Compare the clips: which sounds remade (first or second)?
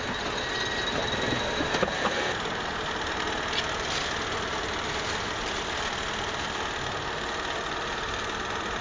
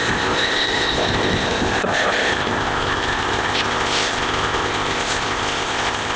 second